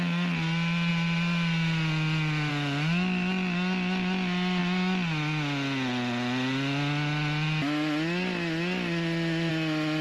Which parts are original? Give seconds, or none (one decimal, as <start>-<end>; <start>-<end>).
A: 0.0-10.0